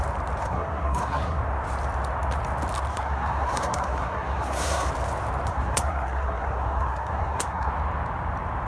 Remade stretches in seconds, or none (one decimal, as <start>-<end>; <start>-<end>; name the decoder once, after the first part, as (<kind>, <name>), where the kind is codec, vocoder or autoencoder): 0.4-1.4 (codec, SNAC); 2.9-4.9; 5.5-7.7

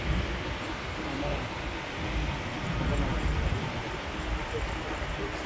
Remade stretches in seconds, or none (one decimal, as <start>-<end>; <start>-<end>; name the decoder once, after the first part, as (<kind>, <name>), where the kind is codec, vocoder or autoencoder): none

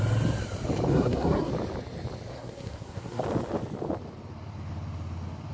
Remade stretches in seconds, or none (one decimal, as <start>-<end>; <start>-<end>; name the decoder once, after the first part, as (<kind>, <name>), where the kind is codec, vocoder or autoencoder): 0.9-1.5 (codec, SNAC); 2.3-3.2

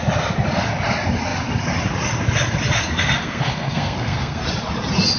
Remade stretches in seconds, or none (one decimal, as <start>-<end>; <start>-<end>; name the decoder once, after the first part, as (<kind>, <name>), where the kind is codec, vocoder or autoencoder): 3.2-4.4 (codec, SNAC)

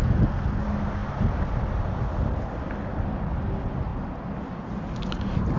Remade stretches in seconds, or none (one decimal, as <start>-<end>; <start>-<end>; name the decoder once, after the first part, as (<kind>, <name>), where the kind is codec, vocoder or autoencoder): none

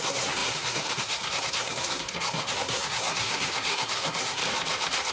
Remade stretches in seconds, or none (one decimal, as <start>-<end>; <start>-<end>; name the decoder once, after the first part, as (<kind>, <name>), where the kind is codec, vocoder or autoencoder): 0.0-4.4 (codec, SNAC)